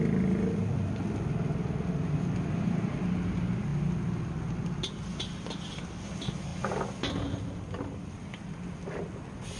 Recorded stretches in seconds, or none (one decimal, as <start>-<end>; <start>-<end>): 0.0-9.6